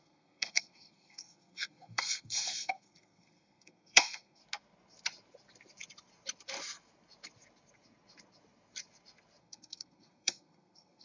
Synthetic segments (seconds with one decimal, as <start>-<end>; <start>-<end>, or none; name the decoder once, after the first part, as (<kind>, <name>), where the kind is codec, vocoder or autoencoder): 0.0-4.4 (codec, SNAC); 9.4-11.0